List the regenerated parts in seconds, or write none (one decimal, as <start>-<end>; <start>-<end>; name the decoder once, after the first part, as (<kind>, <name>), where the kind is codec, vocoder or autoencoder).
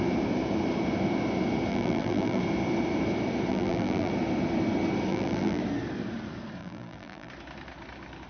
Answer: 1.7-2.4 (vocoder, BigVGAN v2); 3.5-4.1; 5.1-5.6; 6.6-7.3